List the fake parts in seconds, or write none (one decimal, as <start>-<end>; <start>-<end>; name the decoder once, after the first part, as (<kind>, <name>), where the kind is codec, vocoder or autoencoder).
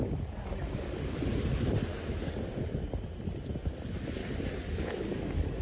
0.5-1.2 (codec, DAC); 1.9-2.4; 4.2-5.6